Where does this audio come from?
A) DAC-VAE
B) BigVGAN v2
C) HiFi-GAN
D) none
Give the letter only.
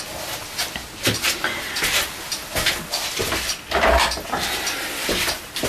D